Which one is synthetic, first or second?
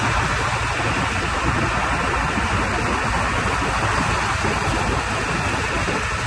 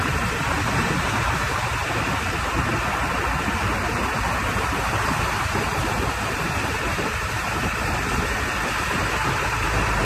second